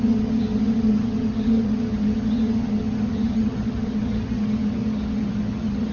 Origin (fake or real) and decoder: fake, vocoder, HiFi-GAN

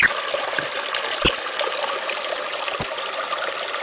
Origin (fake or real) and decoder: real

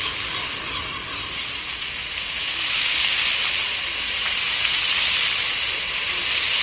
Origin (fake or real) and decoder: real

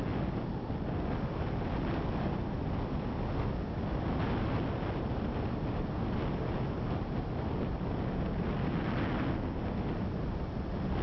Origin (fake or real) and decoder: real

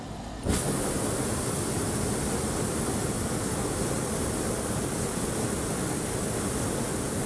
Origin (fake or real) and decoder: real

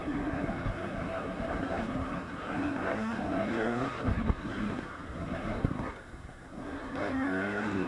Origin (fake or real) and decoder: fake, codec, SNAC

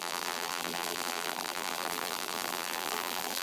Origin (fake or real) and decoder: fake, vocoder, BigVGAN v2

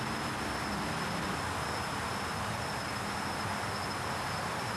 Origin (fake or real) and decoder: real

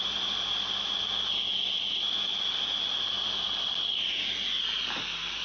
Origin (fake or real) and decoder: real